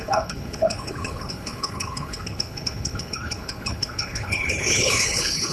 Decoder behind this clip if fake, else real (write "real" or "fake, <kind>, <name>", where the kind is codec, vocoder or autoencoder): fake, codec, HILCodec